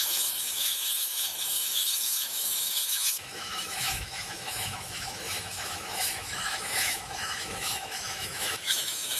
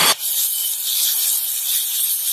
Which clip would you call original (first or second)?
second